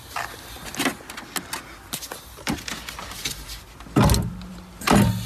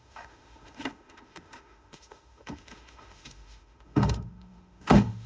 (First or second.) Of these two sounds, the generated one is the second